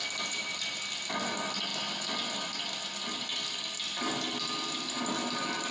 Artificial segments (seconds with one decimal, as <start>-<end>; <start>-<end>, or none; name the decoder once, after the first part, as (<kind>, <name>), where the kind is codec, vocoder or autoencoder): none